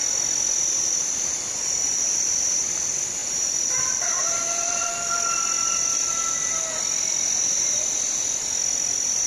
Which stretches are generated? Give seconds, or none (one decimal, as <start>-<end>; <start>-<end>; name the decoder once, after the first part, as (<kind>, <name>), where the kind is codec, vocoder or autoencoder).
1.0-2.3 (vocoder, BigVGAN v2); 3.2-4.9